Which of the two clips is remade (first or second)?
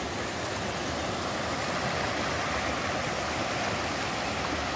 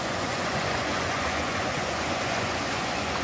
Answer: second